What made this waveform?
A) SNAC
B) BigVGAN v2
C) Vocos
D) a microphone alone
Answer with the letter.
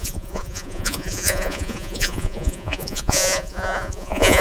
C